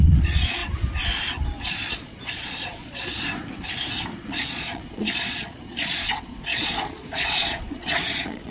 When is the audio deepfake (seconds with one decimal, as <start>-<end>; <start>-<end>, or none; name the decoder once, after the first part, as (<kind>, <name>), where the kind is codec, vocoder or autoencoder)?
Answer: 0.0-0.6 (vocoder, Vocos); 1.7-3.1; 4.2-8.5